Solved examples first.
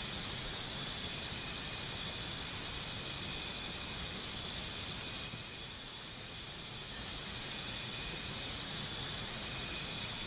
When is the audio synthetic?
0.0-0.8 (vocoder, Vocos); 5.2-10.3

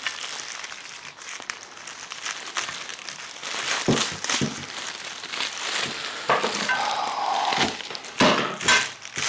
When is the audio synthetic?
2.9-8.2 (vocoder, BigVGAN v2)

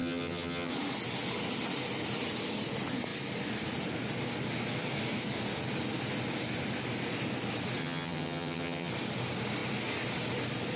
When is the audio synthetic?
0.0-0.7 (vocoder, HiFi-GAN); 7.8-8.9

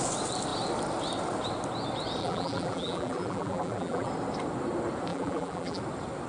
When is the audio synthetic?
2.2-4.1 (vocoder, BigVGAN v2); 5.1-5.8

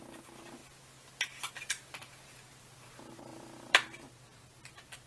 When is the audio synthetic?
3.3-4.5 (vocoder, BigVGAN v2)

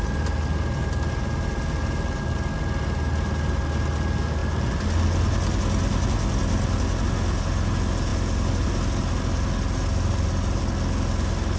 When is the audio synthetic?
none